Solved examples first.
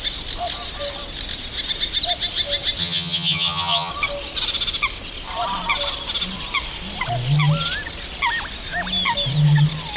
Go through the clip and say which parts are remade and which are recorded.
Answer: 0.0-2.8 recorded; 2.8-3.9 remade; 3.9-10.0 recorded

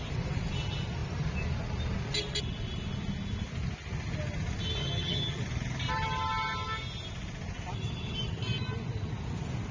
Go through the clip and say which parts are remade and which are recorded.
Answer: 0.0-4.8 recorded; 4.8-5.4 remade; 5.4-9.7 recorded

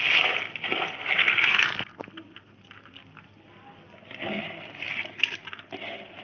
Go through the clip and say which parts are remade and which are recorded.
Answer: 0.0-6.2 recorded